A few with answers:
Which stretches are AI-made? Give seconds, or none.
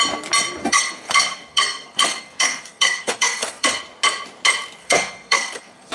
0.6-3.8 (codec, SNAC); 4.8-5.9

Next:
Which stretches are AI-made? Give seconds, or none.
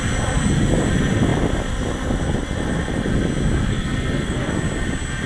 3.7-4.5 (codec, SNAC)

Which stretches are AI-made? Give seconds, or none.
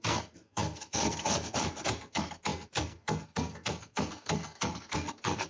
0.0-5.5 (codec, SNAC)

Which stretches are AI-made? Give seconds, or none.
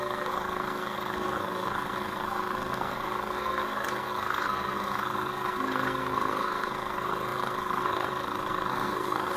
0.0-9.4 (codec, SNAC)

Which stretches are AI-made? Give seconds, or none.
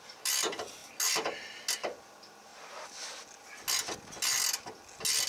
none